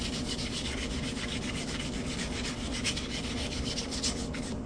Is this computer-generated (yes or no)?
yes